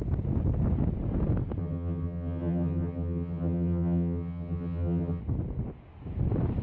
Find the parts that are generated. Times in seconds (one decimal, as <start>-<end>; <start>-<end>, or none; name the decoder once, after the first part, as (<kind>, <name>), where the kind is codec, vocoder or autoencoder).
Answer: 1.6-5.2 (vocoder, HiFi-GAN)